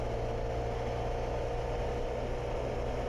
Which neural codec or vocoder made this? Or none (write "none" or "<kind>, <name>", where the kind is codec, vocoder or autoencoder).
none